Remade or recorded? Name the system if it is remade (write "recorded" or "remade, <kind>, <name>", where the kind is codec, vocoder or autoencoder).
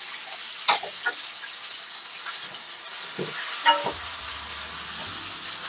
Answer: recorded